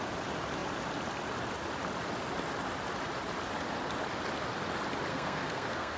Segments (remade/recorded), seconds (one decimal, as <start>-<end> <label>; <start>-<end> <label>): 0.0-5.1 recorded; 5.1-6.0 remade